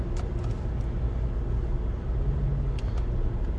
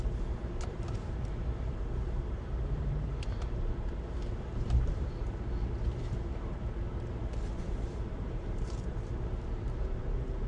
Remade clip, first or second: second